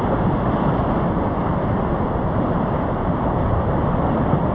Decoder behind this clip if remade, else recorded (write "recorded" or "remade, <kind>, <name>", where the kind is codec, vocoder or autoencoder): recorded